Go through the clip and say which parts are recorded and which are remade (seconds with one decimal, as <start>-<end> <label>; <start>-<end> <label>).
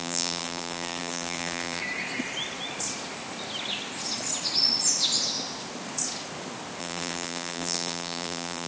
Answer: 0.0-1.8 remade; 1.8-6.8 recorded; 6.8-8.7 remade